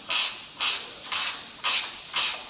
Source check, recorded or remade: recorded